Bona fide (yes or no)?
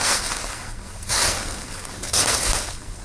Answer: no